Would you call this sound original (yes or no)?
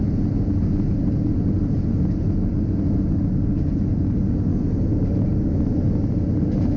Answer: yes